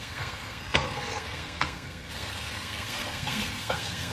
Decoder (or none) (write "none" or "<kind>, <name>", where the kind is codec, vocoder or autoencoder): codec, SNAC